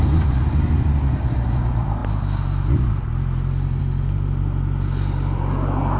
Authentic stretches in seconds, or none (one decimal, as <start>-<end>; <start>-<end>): 0.0-6.0